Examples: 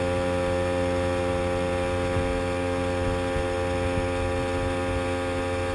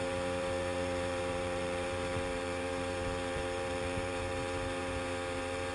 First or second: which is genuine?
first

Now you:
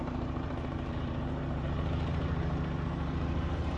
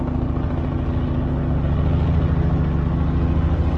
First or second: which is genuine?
second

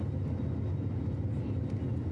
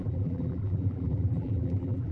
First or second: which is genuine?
first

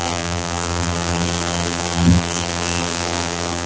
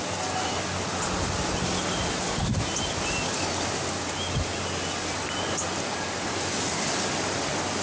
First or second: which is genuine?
second